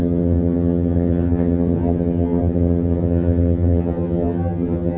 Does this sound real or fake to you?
fake